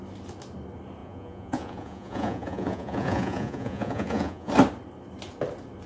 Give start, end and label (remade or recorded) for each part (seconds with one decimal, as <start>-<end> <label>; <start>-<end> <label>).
0.0-1.0 recorded; 1.0-4.5 remade; 4.5-5.9 recorded